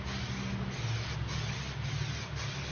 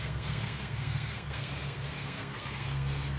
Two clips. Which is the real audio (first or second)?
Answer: first